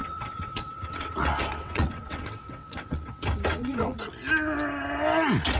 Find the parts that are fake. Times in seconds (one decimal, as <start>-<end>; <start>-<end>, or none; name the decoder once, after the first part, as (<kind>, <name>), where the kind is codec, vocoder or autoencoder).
0.0-3.1 (vocoder, WaveNeXt); 3.5-4.1